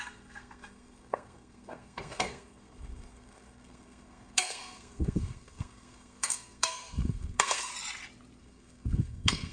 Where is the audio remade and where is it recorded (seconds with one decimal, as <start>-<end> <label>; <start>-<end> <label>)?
0.0-7.7 remade; 7.7-8.4 recorded; 8.4-9.5 remade